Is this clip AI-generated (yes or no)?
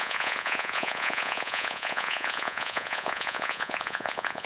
yes